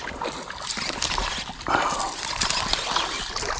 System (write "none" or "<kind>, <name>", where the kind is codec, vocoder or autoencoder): none